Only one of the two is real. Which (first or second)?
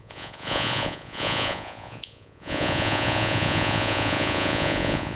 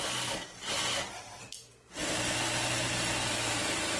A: second